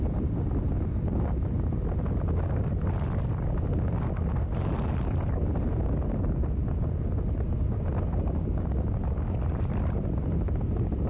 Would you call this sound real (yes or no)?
yes